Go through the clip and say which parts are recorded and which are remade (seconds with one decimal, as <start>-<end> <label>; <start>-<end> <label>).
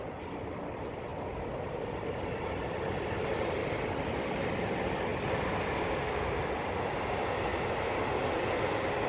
0.0-9.1 recorded